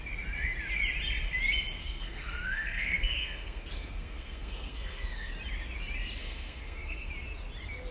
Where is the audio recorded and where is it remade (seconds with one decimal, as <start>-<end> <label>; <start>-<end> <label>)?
0.0-1.8 recorded; 1.8-5.3 remade; 5.3-6.2 recorded; 6.2-7.1 remade; 7.1-7.9 recorded

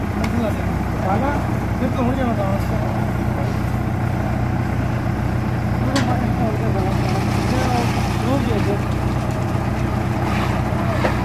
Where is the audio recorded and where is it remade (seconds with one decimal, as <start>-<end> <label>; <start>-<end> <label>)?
0.0-11.2 recorded

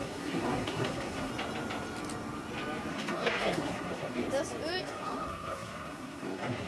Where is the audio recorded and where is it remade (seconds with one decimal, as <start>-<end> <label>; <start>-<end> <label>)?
0.0-1.3 remade; 1.3-2.9 recorded; 2.9-4.2 remade; 4.2-4.8 recorded; 4.8-6.7 remade

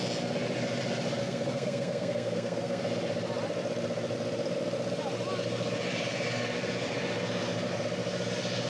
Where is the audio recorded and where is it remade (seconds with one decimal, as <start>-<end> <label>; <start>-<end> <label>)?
0.0-1.2 recorded; 1.2-2.8 remade; 2.8-8.7 recorded

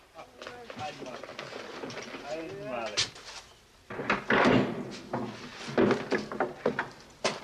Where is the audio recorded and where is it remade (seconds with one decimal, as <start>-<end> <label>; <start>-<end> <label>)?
0.0-7.4 recorded

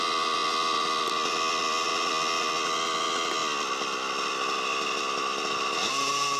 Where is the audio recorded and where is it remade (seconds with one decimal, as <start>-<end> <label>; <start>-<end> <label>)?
0.0-6.4 recorded

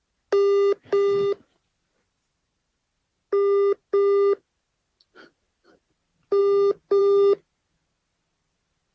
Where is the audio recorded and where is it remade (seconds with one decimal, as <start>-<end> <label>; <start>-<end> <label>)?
0.0-8.9 recorded